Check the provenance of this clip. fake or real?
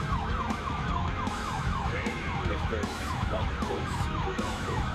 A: fake